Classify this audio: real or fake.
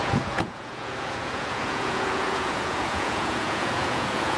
fake